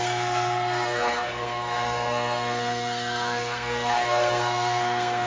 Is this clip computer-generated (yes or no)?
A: yes